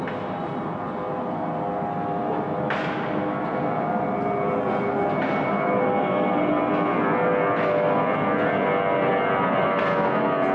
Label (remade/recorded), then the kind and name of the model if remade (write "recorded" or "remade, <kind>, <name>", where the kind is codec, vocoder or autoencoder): recorded